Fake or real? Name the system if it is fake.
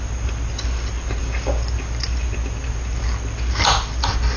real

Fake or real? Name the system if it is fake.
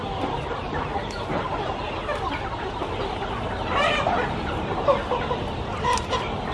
real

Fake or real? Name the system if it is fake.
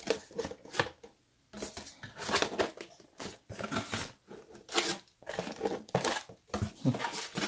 real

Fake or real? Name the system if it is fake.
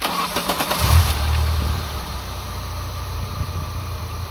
fake, vocoder, BigVGAN v2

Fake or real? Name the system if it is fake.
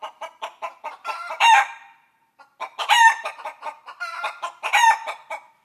fake, vocoder, BigVGAN v2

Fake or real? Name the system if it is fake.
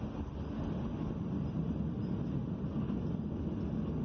real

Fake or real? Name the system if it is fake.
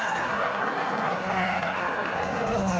fake, codec, SNAC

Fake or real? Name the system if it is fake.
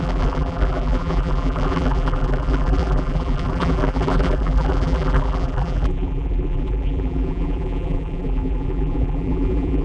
fake, vocoder, BigVGAN v2